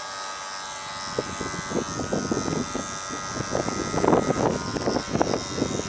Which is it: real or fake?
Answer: real